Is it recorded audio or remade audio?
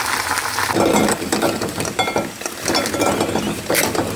recorded